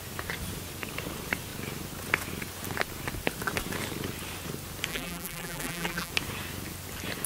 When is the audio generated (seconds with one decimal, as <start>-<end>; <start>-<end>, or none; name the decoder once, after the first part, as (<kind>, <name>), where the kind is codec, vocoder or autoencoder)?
4.9-6.1 (vocoder, BigVGAN v2)